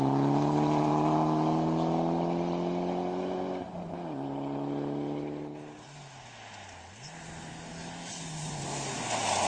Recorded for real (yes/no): yes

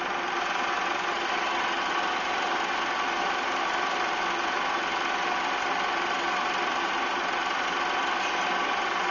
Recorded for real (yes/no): yes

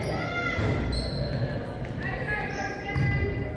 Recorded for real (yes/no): yes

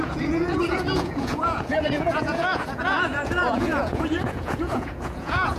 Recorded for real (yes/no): no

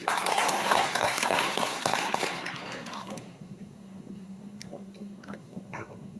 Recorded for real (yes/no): no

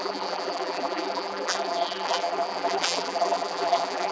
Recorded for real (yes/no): no